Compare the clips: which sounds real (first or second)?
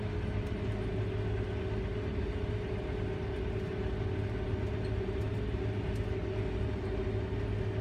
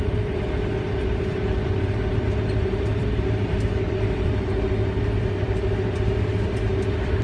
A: first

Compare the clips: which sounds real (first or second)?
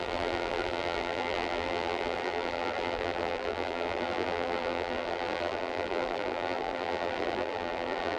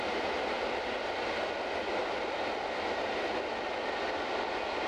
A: second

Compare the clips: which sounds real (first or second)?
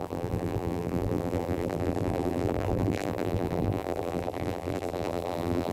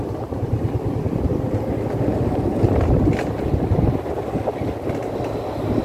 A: second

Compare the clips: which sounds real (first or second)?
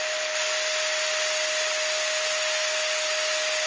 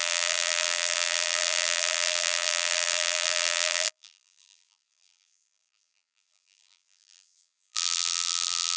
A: first